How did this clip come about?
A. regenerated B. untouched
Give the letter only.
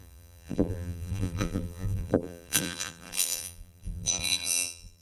A